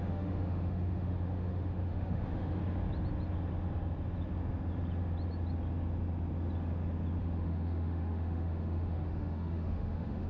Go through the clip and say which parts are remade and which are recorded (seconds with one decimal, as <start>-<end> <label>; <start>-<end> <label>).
0.0-2.6 remade; 2.6-7.2 recorded; 7.2-10.3 remade